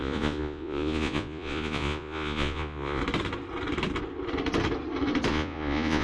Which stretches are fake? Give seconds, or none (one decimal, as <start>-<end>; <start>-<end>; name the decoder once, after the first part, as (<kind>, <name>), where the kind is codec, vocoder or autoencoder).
0.0-3.0 (vocoder, Vocos); 5.3-6.0